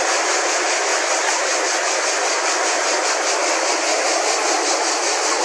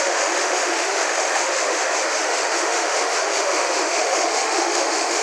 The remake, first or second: second